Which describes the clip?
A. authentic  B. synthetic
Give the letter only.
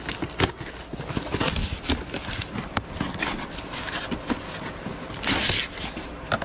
A